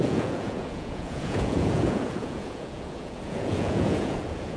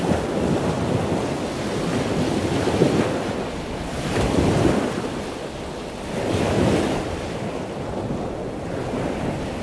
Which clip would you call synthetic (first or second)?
first